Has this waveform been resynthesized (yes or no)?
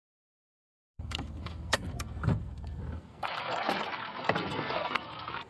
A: yes